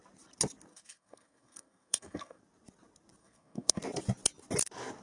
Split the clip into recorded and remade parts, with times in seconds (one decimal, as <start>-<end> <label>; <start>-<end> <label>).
0.0-0.7 recorded; 0.7-2.4 remade; 2.4-3.2 recorded; 3.2-3.8 remade; 3.8-5.0 recorded